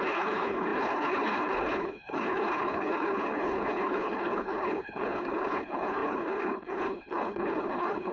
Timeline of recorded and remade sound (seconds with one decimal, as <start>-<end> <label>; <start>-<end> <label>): 0.0-8.1 remade